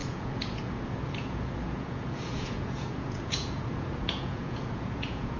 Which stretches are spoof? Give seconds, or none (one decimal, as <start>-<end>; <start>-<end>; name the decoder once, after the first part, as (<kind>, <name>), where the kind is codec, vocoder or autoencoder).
0.0-5.4 (vocoder, Vocos)